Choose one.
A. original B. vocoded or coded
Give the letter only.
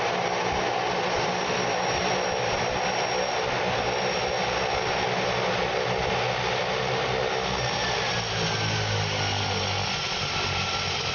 A